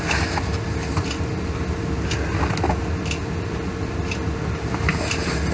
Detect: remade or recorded recorded